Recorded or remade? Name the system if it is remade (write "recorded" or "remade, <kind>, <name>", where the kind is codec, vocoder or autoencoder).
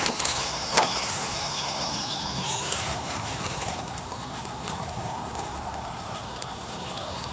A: remade, codec, SNAC